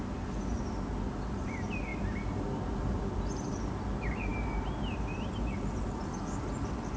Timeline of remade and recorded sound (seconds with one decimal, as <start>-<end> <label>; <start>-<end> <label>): 0.0-1.9 recorded; 1.9-3.6 remade; 3.6-7.0 recorded